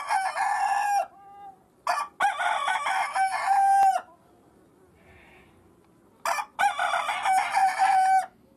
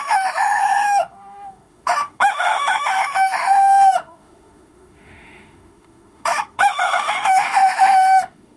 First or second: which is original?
first